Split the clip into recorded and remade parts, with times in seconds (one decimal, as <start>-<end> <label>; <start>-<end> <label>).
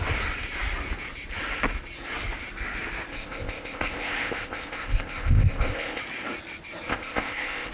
0.0-3.1 recorded; 3.1-6.0 remade; 6.0-6.9 recorded; 6.9-7.7 remade